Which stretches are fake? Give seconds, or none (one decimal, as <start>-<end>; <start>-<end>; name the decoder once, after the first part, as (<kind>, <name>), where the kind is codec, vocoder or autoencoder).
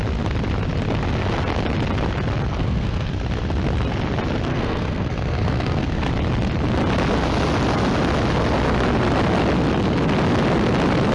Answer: 2.5-3.1 (codec, SNAC); 4.5-6.1